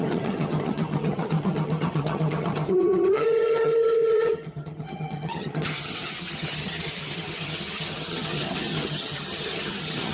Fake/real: fake